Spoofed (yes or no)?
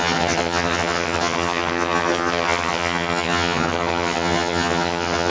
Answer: yes